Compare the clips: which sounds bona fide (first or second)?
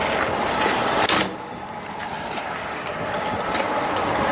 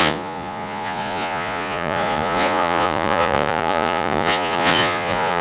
first